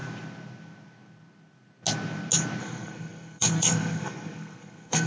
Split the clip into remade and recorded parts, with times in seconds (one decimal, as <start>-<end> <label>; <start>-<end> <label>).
0.0-2.6 recorded; 2.6-5.1 remade